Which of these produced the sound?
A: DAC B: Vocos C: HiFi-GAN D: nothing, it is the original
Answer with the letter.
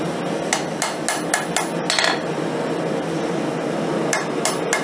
D